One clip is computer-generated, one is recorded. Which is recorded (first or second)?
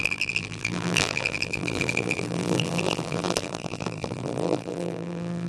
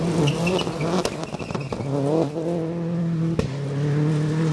second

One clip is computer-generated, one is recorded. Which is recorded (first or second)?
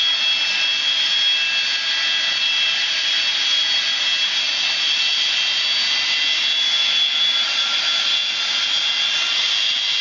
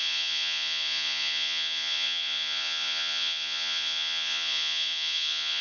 first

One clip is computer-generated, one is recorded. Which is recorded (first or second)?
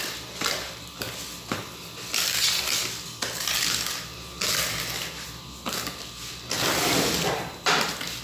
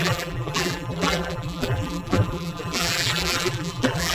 first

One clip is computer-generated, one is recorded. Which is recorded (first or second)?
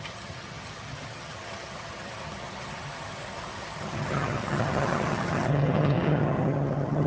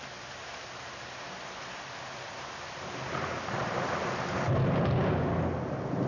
second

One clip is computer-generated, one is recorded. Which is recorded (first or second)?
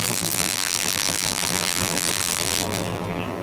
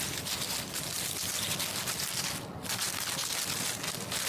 second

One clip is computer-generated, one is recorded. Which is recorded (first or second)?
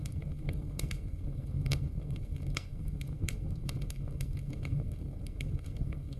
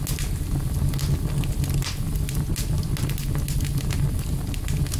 second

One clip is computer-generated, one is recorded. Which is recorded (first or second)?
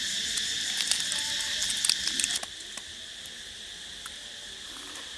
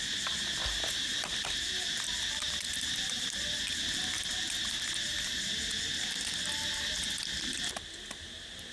second